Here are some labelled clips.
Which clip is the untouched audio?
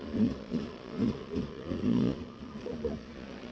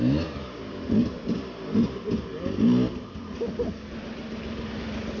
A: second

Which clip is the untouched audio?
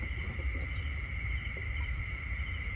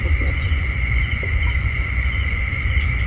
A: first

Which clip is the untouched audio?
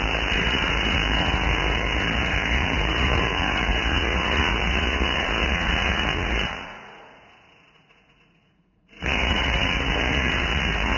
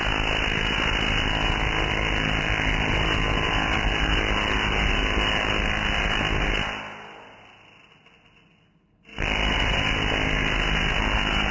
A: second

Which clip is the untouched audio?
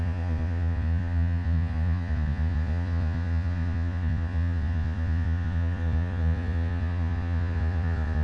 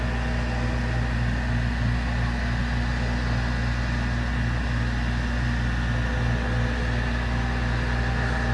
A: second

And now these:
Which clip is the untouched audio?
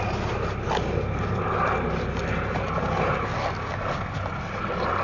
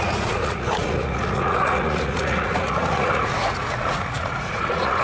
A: first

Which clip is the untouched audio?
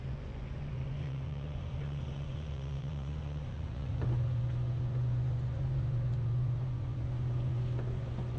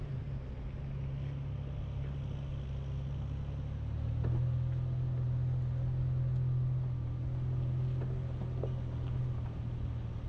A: second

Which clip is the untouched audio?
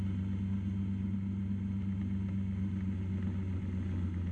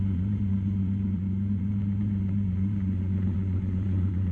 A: first